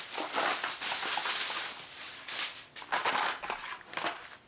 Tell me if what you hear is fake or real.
real